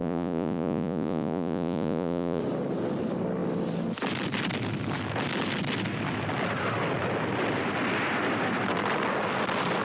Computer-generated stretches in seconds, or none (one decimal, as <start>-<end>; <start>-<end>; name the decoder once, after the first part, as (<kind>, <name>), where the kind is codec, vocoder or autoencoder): 0.0-2.4 (vocoder, Vocos)